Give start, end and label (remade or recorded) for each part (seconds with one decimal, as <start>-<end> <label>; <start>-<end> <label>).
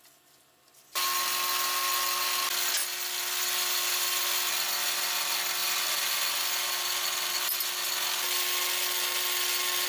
0.0-9.9 recorded